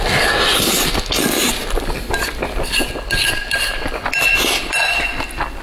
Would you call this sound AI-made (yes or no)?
no